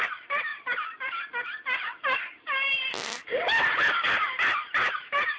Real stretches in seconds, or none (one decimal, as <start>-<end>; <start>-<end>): 0.5-2.7